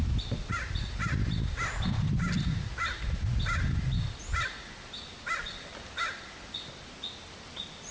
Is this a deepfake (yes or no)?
no